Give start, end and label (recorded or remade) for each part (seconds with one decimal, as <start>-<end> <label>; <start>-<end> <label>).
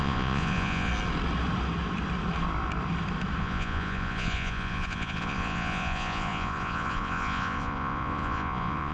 0.0-0.9 remade; 0.9-3.4 recorded; 3.4-8.9 remade